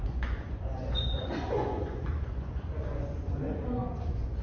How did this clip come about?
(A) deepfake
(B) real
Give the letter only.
A